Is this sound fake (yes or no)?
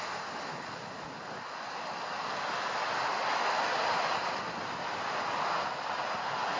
no